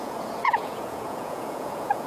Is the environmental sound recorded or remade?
remade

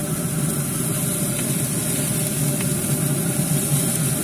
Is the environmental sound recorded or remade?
recorded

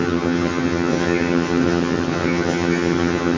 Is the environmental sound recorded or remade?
remade